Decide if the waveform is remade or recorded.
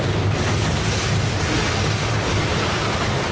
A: recorded